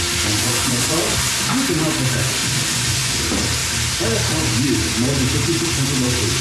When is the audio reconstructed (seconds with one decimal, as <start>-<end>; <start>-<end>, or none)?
0.4-1.2; 2.4-3.2